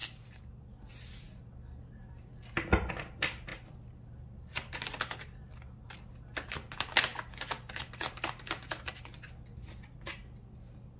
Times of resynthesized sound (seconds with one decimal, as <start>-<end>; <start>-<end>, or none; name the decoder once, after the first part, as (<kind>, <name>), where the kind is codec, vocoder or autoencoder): none